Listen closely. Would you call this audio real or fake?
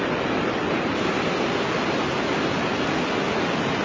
real